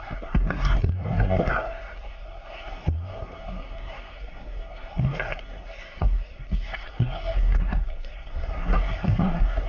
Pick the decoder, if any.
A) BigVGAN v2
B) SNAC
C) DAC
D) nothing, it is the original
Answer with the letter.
B